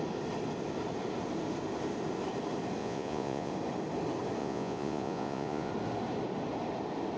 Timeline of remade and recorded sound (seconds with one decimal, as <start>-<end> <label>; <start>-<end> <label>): 0.0-2.8 recorded; 2.8-3.5 remade; 3.5-4.4 recorded; 4.4-5.7 remade; 5.7-7.2 recorded